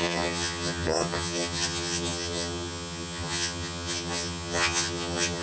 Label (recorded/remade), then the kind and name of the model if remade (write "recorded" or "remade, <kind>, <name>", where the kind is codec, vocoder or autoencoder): remade, vocoder, HiFi-GAN